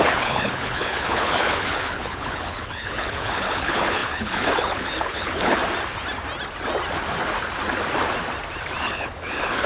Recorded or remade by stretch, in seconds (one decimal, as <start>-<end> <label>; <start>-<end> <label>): 0.0-5.6 remade; 5.6-8.8 recorded; 8.8-9.7 remade